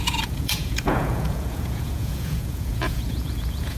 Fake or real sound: fake